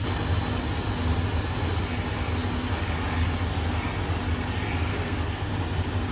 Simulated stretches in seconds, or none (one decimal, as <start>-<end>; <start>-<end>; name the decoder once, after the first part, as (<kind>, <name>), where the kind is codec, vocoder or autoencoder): 4.9-5.5 (codec, SNAC)